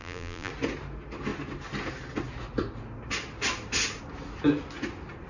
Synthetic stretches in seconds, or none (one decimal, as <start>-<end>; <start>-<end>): 0.0-0.5